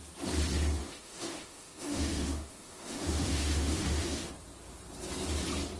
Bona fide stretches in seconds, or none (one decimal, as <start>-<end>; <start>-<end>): 0.0-0.8; 4.3-5.8